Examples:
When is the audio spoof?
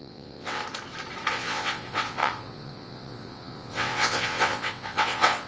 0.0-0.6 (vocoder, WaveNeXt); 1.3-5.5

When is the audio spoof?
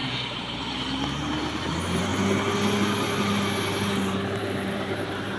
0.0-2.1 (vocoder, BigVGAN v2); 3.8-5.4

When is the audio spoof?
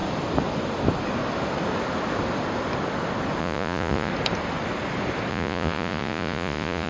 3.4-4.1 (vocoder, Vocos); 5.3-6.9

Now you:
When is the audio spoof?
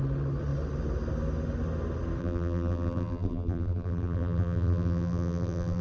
2.2-5.8 (vocoder, BigVGAN v2)